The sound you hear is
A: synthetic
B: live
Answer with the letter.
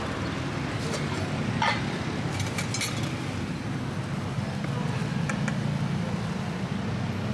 B